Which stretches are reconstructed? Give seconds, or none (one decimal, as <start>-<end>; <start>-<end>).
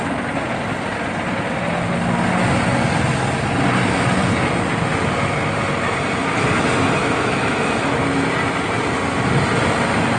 7.0-7.8